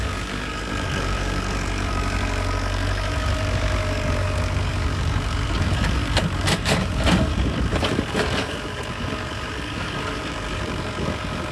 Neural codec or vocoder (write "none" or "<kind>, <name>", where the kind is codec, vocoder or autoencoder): codec, DAC